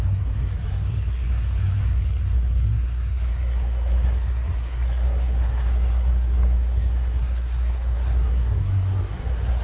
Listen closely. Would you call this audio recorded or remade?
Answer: remade